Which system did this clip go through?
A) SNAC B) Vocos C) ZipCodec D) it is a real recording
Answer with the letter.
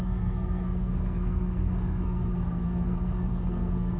A